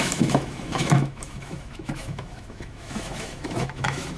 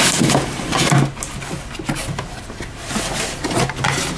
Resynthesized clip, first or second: first